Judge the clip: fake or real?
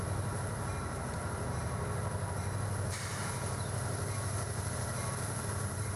fake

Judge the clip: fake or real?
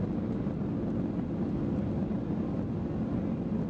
real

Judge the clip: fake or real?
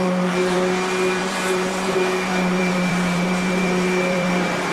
fake